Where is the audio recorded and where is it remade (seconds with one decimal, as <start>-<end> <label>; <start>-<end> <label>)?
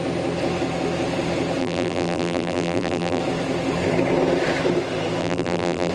0.0-1.6 recorded; 1.6-3.2 remade; 3.2-5.2 recorded; 5.2-5.9 remade